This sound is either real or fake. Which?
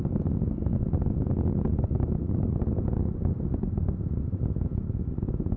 real